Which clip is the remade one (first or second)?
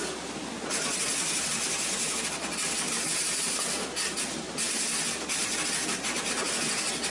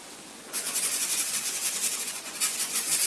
second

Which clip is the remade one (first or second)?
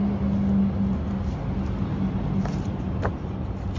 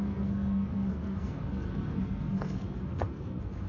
second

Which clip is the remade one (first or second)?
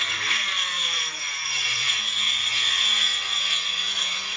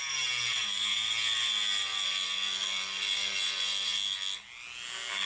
first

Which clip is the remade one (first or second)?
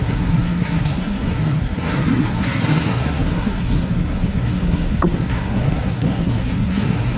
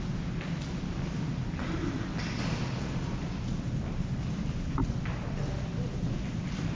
first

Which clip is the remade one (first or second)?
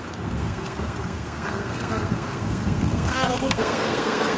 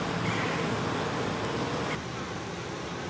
first